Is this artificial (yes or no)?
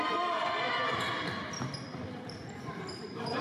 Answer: yes